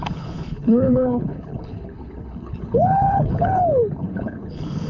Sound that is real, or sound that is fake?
fake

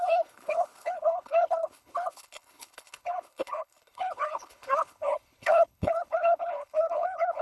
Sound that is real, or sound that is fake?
fake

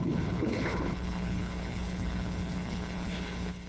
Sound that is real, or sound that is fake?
fake